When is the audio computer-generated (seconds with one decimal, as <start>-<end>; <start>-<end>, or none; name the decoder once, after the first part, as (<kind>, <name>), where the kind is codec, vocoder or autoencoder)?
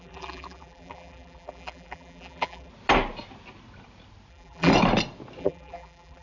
0.0-2.7 (vocoder, BigVGAN v2); 4.3-4.7; 5.4-6.2